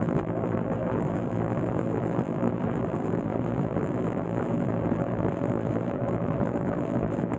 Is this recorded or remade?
remade